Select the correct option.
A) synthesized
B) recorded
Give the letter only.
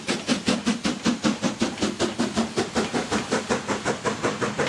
B